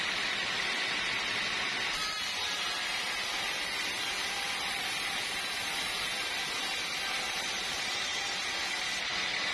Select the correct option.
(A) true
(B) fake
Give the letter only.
A